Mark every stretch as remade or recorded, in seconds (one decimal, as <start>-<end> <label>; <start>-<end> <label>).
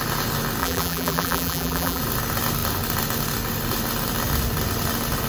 0.0-0.6 recorded; 0.6-2.0 remade; 2.0-5.3 recorded